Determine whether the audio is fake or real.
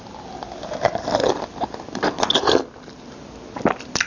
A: real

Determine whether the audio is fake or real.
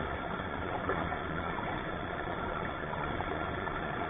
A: fake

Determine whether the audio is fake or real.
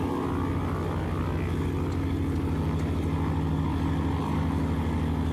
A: real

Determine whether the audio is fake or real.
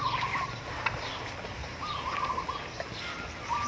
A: fake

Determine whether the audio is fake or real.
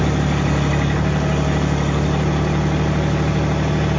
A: real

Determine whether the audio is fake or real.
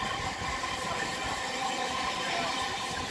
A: fake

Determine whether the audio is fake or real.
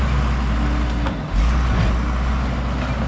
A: real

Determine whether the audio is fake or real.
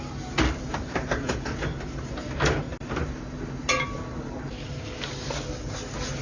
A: real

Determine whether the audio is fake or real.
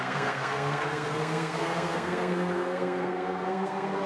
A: fake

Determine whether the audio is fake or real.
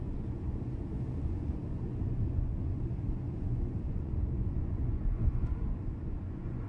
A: fake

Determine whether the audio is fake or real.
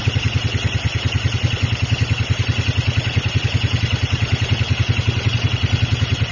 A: real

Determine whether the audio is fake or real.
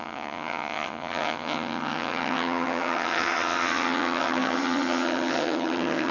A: fake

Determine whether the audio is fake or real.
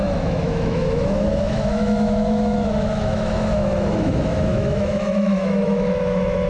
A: fake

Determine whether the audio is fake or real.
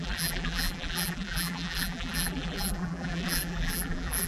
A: fake